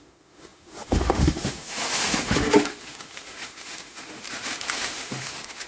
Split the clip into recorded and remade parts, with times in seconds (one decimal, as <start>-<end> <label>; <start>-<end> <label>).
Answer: 0.0-5.7 remade